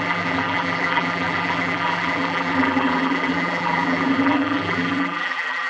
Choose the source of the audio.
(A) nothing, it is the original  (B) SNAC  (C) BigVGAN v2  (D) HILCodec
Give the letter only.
C